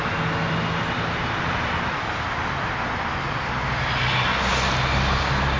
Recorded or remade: recorded